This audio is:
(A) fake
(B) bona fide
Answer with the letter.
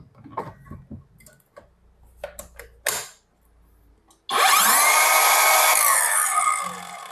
B